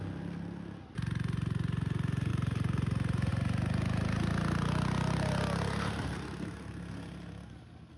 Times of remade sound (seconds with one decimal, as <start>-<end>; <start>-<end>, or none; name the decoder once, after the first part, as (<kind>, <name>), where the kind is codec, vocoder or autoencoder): 2.3-3.3 (vocoder, BigVGAN v2)